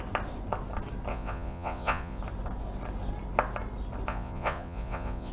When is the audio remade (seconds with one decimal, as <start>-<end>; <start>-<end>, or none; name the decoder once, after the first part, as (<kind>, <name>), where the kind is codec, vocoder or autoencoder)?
1.1-2.2 (vocoder, Vocos); 4.1-5.3